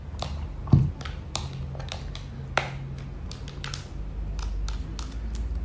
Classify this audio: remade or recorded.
recorded